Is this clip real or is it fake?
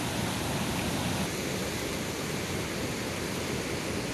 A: real